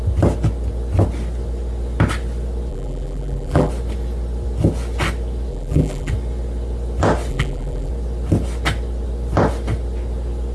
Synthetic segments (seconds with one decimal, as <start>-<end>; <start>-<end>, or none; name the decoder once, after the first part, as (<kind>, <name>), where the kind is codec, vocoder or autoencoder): 2.7-3.7 (vocoder, BigVGAN v2); 5.5-6.1; 7.3-7.9